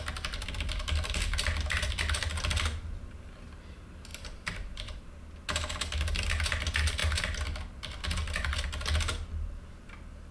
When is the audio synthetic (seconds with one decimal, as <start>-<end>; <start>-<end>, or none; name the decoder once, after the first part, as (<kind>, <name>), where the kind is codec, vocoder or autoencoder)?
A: 4.1-5.1 (vocoder, BigVGAN v2)

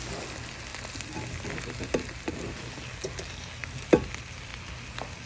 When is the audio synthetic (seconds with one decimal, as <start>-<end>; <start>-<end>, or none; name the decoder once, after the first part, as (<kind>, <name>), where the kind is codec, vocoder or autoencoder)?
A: none